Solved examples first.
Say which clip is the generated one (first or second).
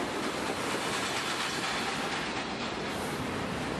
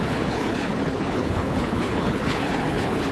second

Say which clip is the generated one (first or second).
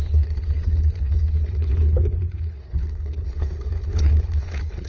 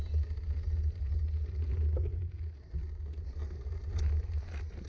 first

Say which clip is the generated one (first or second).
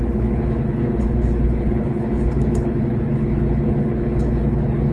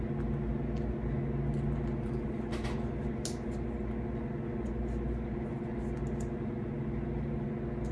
first